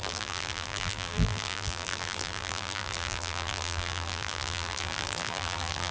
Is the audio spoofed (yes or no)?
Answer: yes